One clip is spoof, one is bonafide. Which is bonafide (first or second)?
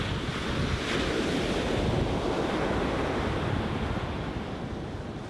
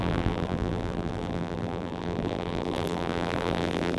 first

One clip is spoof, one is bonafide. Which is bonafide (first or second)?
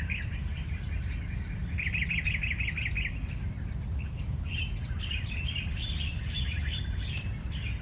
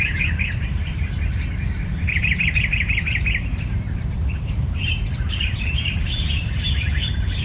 first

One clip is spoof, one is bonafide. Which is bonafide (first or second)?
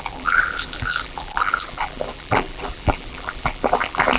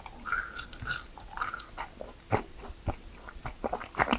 second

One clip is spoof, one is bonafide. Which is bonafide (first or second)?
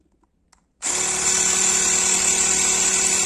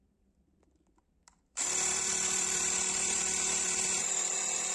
first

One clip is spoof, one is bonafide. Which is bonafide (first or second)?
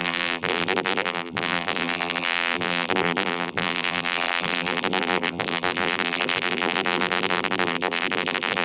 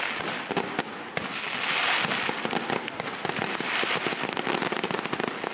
second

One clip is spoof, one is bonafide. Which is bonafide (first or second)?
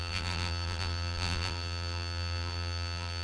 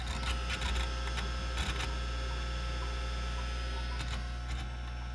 second